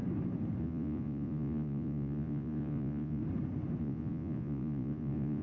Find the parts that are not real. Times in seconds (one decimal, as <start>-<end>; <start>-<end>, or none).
0.6-3.2; 3.8-5.4